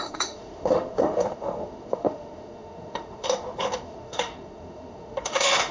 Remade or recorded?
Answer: remade